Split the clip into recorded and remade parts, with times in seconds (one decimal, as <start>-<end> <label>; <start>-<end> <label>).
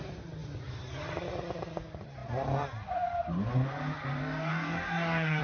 0.0-4.2 recorded; 4.2-5.4 remade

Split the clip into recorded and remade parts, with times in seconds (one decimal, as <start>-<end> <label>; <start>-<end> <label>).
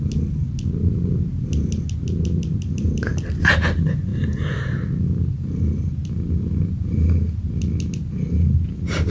0.0-9.1 recorded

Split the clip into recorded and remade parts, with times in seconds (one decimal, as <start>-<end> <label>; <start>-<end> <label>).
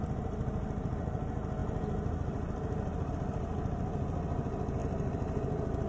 0.0-5.9 recorded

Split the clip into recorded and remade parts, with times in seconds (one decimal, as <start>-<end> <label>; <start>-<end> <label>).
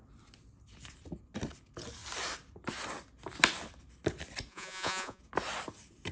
0.0-4.5 recorded; 4.5-5.2 remade; 5.2-6.1 recorded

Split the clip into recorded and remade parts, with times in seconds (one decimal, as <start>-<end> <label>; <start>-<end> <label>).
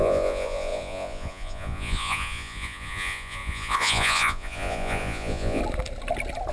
0.0-5.6 remade; 5.6-6.5 recorded